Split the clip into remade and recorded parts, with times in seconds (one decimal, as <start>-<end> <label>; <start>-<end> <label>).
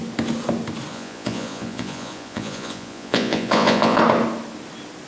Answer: 0.0-0.9 recorded; 0.9-4.0 remade; 4.0-5.1 recorded